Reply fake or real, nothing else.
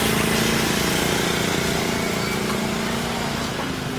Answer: real